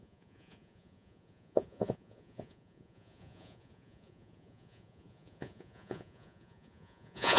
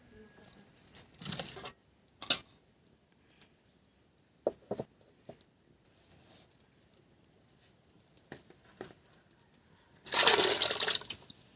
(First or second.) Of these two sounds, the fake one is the first